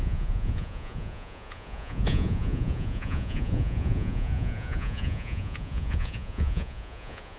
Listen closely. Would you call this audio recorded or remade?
remade